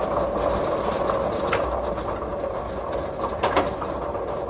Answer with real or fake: real